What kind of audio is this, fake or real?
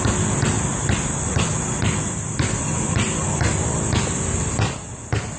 real